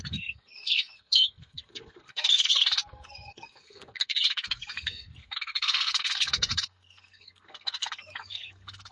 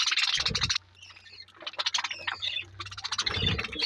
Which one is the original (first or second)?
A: second